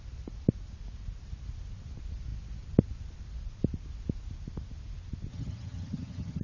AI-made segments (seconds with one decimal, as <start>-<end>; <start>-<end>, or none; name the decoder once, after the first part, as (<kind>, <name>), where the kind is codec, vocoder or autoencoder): 5.3-6.4 (vocoder, HiFi-GAN)